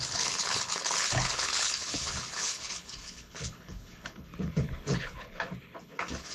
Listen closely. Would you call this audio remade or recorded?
remade